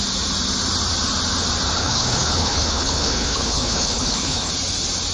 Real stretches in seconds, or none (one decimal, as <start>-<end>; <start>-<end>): 0.0-1.8; 4.5-5.1